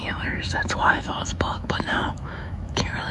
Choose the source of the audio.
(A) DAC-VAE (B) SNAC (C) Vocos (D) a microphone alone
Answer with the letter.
A